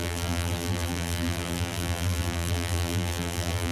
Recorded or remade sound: remade